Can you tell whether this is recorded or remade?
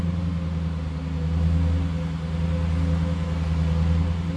recorded